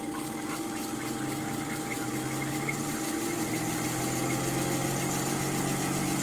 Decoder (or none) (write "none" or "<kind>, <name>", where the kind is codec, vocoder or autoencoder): none